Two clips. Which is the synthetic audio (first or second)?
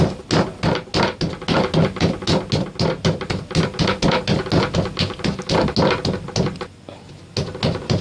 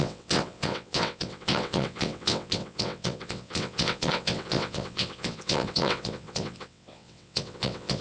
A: second